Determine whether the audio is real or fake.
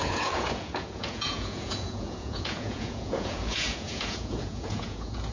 fake